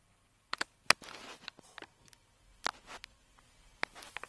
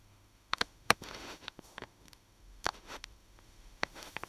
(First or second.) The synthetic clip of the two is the second